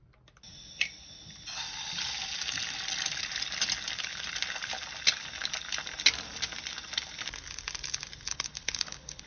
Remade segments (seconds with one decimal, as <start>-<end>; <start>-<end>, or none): 8.3-9.3